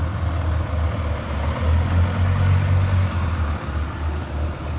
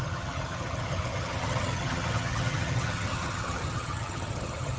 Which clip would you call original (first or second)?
first